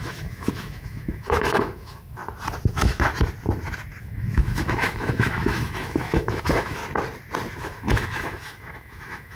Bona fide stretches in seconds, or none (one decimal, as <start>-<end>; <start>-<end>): 2.2-2.7; 3.1-4.0; 6.8-7.6